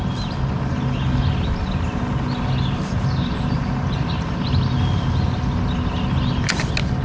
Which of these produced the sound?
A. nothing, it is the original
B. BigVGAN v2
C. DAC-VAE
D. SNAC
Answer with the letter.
A